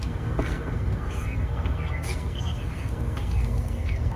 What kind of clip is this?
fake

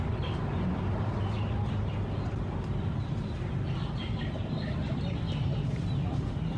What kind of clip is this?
real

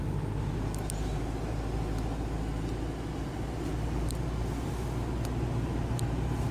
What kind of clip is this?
real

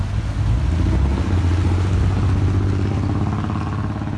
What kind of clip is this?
real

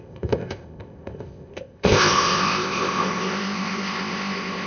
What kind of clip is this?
fake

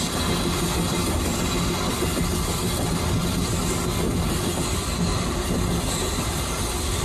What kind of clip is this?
real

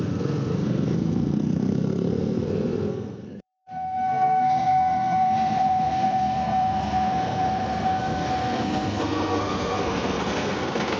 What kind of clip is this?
fake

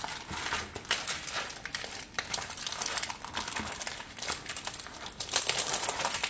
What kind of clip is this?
real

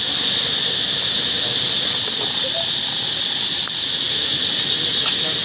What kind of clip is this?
real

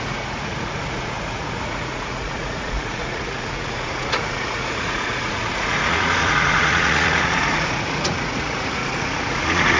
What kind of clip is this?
fake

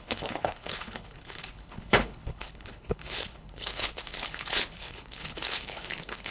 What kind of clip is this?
fake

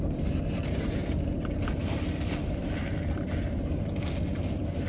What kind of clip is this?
real